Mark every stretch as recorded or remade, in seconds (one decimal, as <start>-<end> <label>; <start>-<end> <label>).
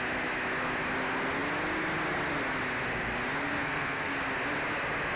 0.0-3.4 recorded; 3.4-4.1 remade; 4.1-5.2 recorded